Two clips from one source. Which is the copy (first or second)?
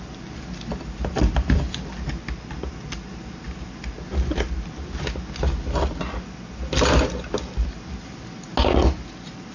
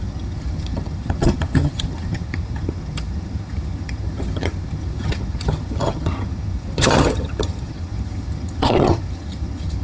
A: second